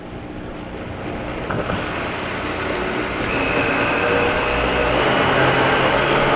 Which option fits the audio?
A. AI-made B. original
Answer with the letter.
B